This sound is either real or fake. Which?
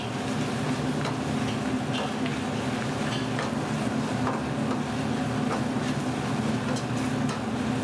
real